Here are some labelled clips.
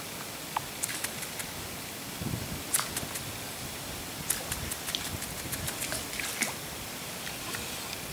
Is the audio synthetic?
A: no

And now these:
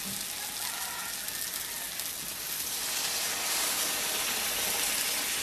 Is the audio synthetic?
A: no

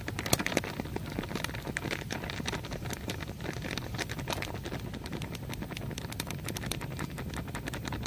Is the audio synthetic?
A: no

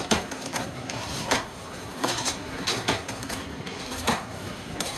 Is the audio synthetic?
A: yes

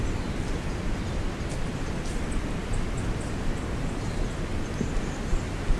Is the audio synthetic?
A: no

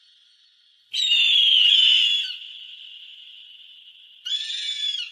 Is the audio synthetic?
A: no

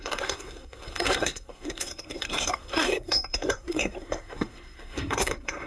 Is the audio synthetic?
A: yes